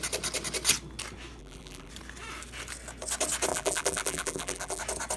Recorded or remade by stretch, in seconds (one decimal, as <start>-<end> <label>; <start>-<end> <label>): 0.0-1.4 recorded; 1.4-1.9 remade; 1.9-3.5 recorded; 3.5-4.8 remade; 4.8-5.2 recorded